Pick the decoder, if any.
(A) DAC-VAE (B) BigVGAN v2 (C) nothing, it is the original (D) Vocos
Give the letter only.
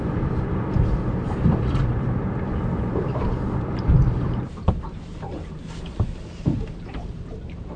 B